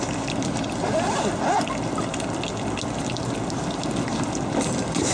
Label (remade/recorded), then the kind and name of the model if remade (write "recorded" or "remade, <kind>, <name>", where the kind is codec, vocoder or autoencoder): recorded